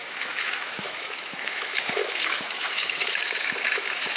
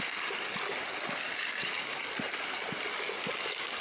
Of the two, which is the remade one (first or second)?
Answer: first